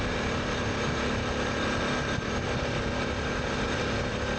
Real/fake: real